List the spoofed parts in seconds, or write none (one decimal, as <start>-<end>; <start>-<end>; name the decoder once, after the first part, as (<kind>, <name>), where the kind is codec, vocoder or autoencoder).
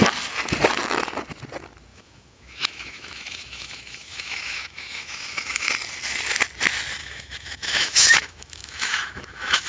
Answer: 1.9-5.7 (autoencoder, DAC-VAE); 7.0-9.7